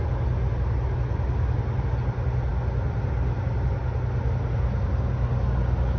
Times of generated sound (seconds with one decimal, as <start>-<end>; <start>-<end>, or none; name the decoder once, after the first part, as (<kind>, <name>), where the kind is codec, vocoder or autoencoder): none